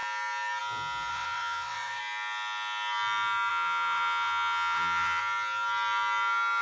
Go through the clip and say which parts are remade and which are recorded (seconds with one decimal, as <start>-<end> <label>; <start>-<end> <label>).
0.0-1.1 recorded; 1.1-2.0 remade; 2.0-3.5 recorded; 3.5-5.2 remade; 5.2-6.6 recorded